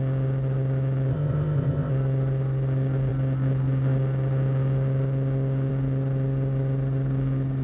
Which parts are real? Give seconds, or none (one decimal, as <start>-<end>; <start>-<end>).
0.0-1.1; 1.9-7.6